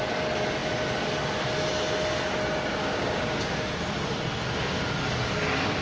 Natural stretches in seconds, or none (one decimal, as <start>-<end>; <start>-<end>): 0.0-2.8; 3.7-5.8